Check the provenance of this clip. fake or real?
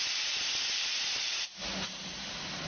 real